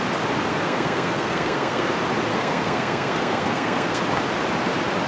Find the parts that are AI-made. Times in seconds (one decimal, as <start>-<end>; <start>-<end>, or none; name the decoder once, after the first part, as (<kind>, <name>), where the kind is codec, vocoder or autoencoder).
0.5-1.9 (codec, SNAC); 2.3-4.0